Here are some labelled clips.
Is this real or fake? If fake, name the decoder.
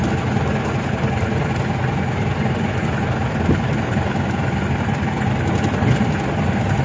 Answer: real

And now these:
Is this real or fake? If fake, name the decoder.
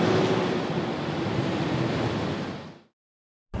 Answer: real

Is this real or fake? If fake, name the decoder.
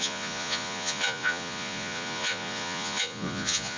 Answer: fake, vocoder, Vocos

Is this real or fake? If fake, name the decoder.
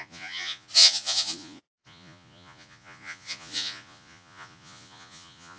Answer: fake, vocoder, Vocos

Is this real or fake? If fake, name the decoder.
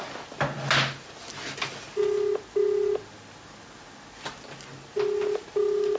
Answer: real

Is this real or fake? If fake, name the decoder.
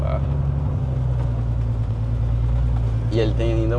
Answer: real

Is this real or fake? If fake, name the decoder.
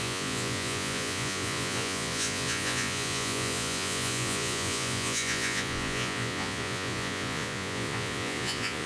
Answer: fake, vocoder, Vocos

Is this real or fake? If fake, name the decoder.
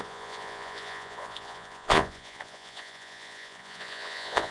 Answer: fake, vocoder, Vocos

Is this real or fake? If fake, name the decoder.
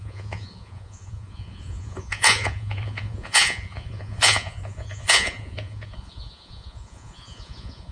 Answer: fake, vocoder, Vocos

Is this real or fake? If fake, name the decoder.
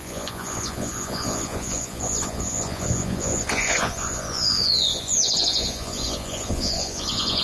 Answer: fake, vocoder, Vocos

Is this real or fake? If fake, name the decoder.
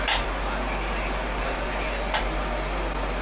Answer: real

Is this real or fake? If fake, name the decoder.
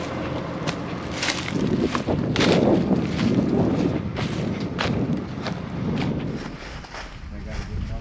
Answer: real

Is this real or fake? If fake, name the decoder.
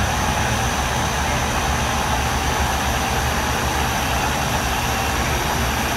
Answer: real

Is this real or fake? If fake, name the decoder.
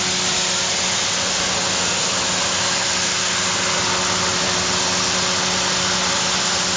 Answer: real